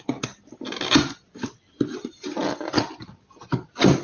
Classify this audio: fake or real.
real